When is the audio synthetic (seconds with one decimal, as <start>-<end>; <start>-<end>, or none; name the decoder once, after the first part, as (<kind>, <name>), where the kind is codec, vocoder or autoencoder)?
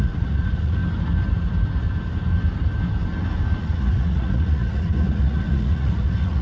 0.0-0.8 (vocoder, Vocos); 3.6-6.4